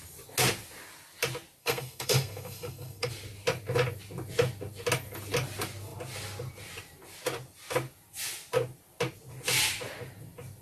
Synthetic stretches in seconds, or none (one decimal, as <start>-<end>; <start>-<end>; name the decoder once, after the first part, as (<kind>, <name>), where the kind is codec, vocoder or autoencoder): 1.6-3.1 (codec, SNAC)